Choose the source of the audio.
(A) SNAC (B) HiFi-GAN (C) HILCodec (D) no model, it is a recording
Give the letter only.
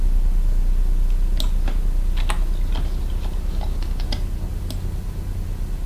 D